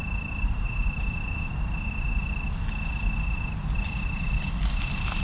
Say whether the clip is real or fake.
real